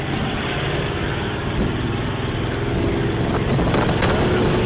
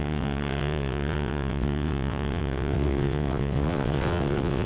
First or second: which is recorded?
first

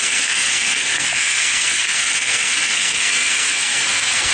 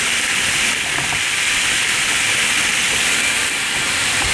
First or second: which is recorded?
second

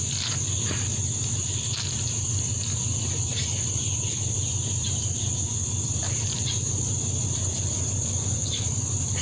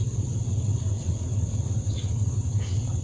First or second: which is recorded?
first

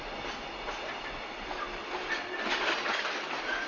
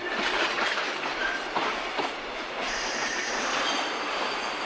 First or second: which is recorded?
first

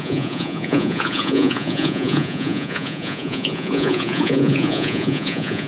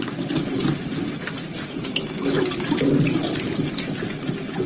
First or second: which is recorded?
second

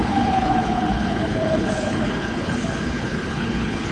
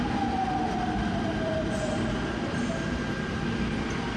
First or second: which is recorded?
second